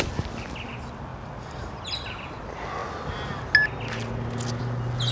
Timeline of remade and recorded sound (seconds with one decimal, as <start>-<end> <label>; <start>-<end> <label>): 0.0-5.1 recorded

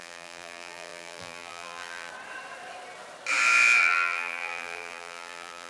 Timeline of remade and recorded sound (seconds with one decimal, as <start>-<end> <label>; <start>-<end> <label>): 0.0-2.1 remade; 2.1-3.8 recorded; 3.8-5.7 remade

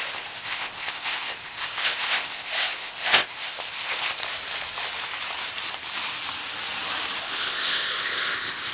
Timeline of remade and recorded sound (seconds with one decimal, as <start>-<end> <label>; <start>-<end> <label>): 0.0-4.2 remade; 4.2-7.2 recorded; 7.2-8.7 remade

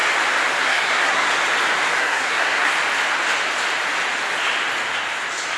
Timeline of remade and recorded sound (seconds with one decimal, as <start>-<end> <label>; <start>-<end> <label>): 0.0-0.6 recorded; 0.6-1.3 remade; 1.3-2.0 recorded; 2.0-2.7 remade; 2.7-5.6 recorded